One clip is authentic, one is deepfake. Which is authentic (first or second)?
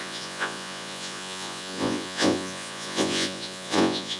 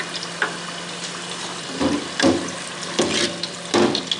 second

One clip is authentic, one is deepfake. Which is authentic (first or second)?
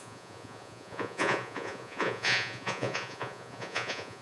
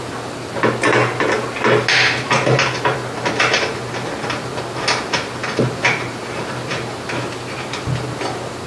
second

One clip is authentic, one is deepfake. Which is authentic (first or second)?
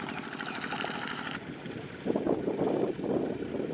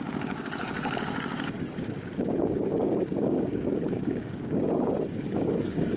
first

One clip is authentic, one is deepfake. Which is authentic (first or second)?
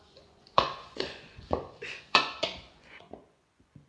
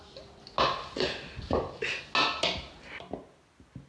second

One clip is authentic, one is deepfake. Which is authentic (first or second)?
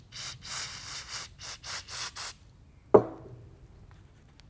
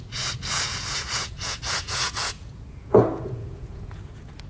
first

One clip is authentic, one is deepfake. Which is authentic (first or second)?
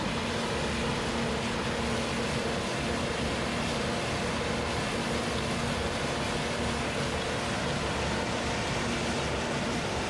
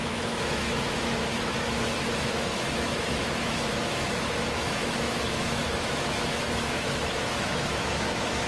first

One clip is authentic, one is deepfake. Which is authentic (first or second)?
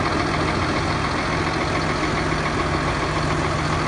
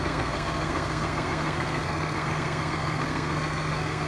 first